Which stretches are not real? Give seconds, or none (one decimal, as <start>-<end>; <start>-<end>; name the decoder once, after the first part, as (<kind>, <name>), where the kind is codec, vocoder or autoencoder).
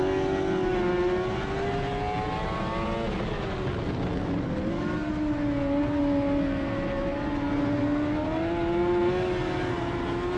none